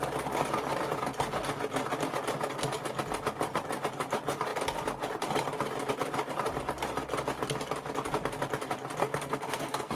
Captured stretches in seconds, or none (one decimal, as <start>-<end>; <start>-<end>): 0.0-9.0